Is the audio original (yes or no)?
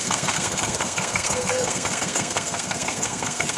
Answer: no